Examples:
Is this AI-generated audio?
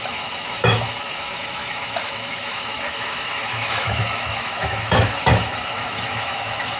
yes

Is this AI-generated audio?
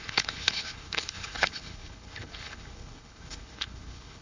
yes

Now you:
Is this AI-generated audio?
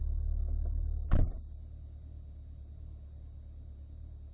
no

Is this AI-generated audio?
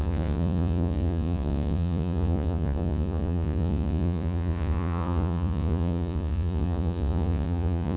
yes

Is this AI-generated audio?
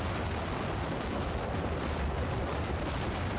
no